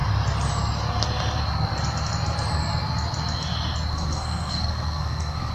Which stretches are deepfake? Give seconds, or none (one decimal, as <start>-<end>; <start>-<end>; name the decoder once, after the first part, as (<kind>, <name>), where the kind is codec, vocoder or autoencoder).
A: 3.9-5.5 (codec, SNAC)